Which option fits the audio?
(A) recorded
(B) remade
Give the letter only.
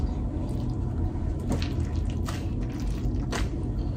A